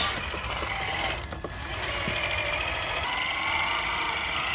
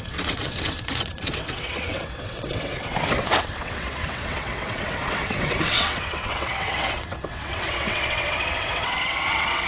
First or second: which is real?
first